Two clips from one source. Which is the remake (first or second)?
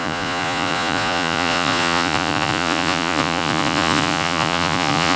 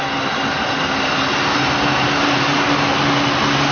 first